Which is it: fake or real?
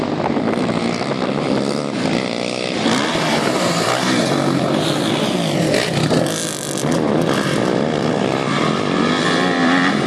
real